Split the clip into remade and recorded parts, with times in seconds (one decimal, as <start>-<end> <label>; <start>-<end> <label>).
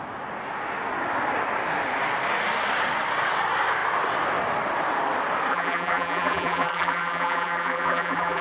0.0-5.5 recorded; 5.5-8.4 remade